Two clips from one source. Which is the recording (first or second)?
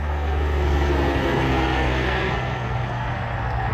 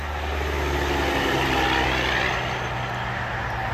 second